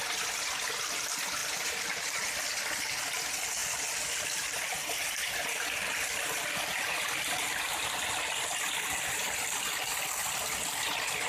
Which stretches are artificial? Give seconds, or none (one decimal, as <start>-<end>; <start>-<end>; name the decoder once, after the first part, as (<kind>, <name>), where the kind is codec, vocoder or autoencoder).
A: 1.4-2.1 (vocoder, BigVGAN v2); 3.6-7.0